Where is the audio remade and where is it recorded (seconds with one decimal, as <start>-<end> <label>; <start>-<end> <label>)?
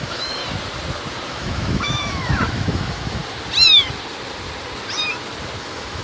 0.0-0.4 remade; 0.4-1.3 recorded; 1.3-3.2 remade; 3.2-5.6 recorded; 5.6-6.0 remade